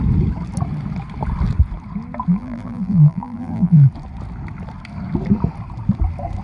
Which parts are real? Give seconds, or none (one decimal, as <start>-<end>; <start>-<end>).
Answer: 0.0-2.3; 3.9-6.4